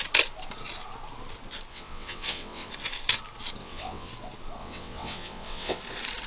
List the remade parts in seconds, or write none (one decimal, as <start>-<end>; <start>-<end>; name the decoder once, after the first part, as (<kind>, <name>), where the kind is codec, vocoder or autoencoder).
1.7-2.7 (vocoder, WaveNeXt); 3.6-4.1; 4.6-5.8